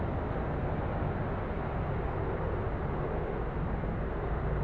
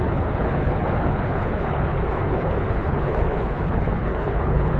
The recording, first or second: first